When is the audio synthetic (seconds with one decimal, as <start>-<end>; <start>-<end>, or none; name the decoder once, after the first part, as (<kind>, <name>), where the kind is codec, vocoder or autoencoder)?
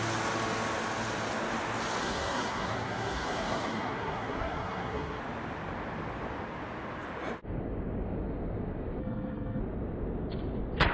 2.0-5.2 (codec, SNAC); 9.0-9.6